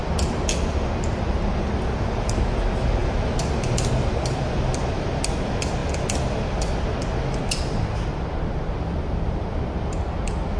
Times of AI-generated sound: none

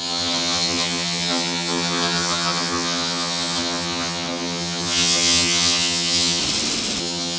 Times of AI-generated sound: 0.0-6.4 (vocoder, HiFi-GAN); 7.0-7.4

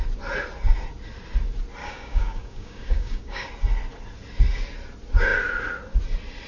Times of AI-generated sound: 1.8-3.5 (codec, DAC)

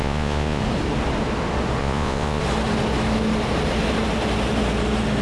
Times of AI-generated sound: 0.0-0.6 (vocoder, Vocos); 1.8-2.4

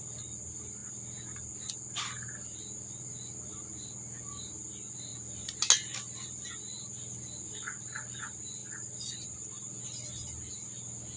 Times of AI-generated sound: none

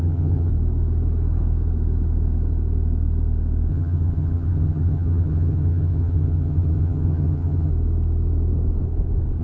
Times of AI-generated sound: 0.0-0.5 (vocoder, HiFi-GAN); 3.7-7.7

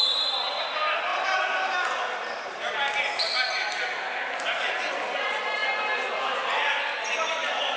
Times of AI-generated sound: none

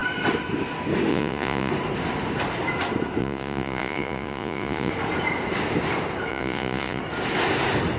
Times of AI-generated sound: 1.1-1.7 (vocoder, Vocos); 3.2-4.9; 6.3-7.0